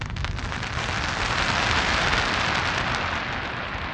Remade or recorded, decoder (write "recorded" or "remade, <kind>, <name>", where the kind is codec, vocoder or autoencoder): recorded